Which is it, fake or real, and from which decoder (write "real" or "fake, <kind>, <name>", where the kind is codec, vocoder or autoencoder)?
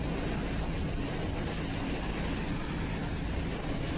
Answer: real